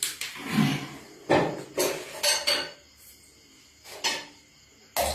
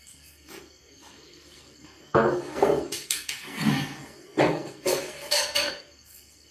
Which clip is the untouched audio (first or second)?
first